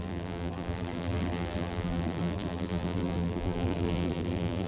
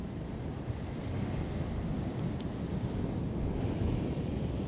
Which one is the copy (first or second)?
first